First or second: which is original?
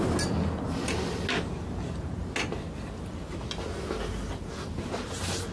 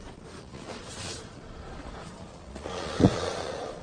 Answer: first